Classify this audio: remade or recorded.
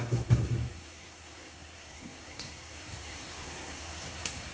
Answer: remade